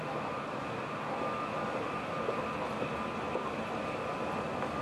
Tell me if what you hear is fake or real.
real